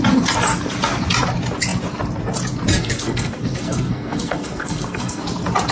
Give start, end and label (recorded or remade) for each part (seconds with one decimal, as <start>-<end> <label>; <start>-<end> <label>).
0.0-2.7 recorded; 2.7-5.2 remade; 5.2-5.7 recorded